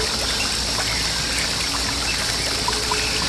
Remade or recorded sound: recorded